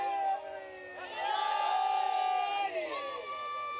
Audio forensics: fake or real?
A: real